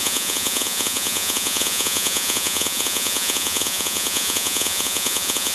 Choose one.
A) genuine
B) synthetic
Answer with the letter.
B